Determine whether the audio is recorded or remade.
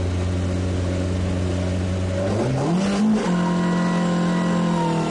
recorded